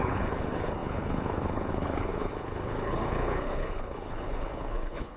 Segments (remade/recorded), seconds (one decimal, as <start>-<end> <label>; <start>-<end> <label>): 0.0-5.2 remade